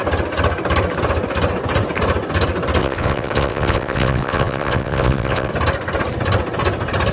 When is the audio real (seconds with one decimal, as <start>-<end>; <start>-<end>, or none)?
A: 0.0-2.8; 5.5-7.1

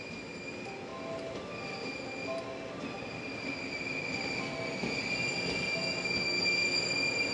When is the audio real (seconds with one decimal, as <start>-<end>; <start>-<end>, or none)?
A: 0.0-7.3

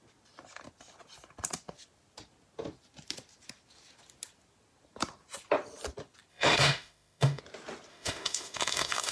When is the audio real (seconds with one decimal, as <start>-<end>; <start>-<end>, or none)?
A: 0.0-6.3; 7.4-7.9